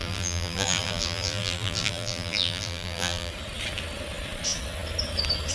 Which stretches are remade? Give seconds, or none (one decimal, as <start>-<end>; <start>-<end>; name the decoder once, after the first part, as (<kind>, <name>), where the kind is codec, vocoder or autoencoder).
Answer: 0.0-3.3 (vocoder, BigVGAN v2)